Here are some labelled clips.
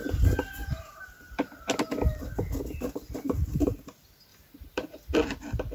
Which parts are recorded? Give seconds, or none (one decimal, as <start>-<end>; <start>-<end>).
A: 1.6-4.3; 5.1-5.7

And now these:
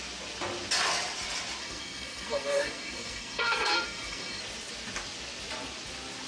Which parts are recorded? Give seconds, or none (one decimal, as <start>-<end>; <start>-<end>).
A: 0.0-1.6; 4.4-6.3

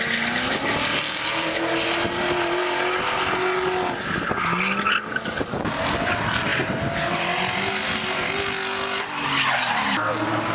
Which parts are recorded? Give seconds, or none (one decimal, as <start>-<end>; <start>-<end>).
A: 0.0-10.5

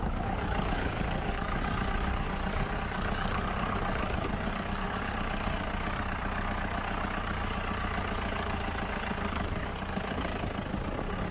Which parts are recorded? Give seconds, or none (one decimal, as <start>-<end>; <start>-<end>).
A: 10.3-11.3